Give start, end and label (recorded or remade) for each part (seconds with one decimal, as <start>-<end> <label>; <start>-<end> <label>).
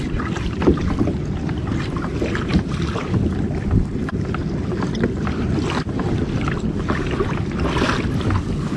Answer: 0.0-8.8 recorded